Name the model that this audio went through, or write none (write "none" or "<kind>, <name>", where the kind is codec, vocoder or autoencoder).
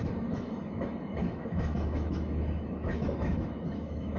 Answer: autoencoder, DAC-VAE